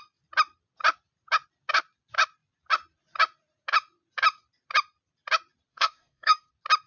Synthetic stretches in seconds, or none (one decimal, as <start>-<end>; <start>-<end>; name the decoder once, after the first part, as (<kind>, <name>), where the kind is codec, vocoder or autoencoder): 5.7-6.5 (codec, SNAC)